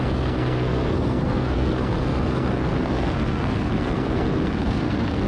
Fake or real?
fake